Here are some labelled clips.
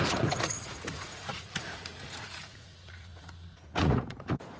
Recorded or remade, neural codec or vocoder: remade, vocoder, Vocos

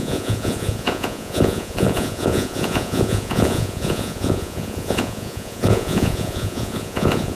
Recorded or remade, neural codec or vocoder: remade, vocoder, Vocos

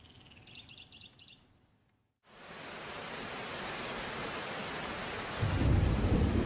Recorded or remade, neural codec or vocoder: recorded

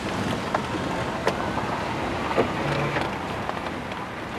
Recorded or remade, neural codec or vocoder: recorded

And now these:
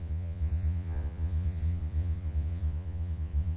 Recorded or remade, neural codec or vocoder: remade, vocoder, Vocos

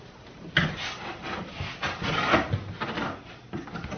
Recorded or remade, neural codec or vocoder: recorded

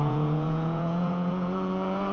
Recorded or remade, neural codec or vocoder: remade, vocoder, Vocos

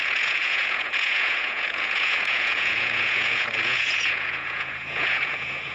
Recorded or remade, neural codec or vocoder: remade, vocoder, Vocos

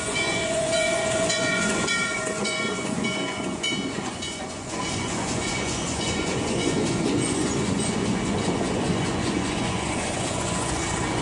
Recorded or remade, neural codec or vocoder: remade, vocoder, Vocos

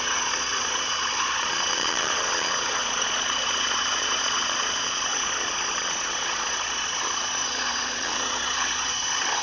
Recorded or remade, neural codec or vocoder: remade, vocoder, Vocos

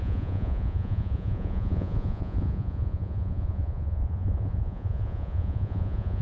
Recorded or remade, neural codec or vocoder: remade, vocoder, Vocos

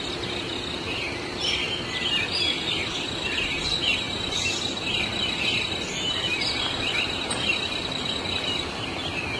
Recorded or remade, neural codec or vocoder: recorded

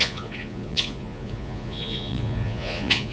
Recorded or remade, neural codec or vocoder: remade, vocoder, Vocos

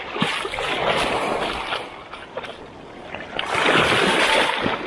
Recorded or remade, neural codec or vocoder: recorded